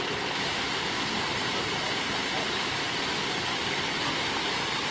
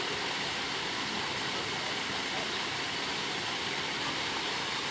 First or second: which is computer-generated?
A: first